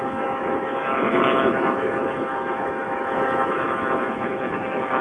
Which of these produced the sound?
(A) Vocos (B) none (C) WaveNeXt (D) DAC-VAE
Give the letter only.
D